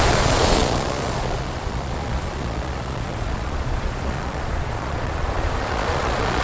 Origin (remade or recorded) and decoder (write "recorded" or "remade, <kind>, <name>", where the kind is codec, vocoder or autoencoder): remade, vocoder, Vocos